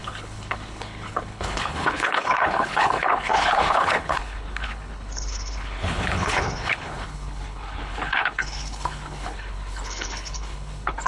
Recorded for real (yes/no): no